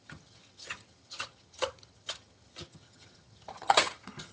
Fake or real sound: fake